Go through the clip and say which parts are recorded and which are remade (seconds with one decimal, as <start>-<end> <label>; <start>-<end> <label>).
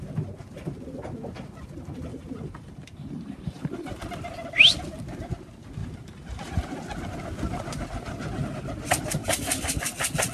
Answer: 0.0-2.1 recorded; 2.1-4.1 remade; 4.1-5.8 recorded; 5.8-6.6 remade; 6.6-9.2 recorded; 9.2-9.8 remade; 9.8-10.3 recorded